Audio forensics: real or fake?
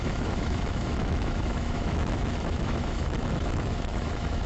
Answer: fake